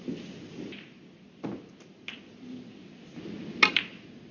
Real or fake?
real